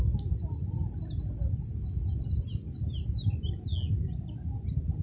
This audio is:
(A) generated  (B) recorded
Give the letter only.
B